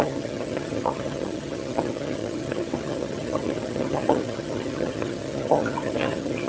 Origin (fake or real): fake